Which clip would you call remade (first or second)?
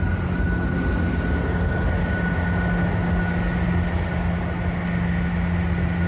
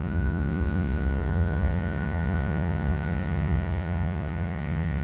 second